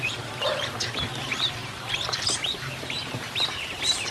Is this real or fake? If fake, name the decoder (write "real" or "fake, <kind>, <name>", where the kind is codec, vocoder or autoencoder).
fake, vocoder, BigVGAN v2